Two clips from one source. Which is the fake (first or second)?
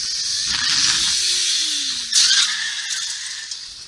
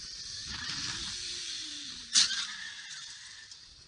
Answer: second